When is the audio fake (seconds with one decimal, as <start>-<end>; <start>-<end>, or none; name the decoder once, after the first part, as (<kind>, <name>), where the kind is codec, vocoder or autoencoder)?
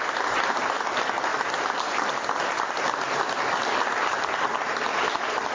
0.0-4.0 (vocoder, BigVGAN v2); 5.1-5.5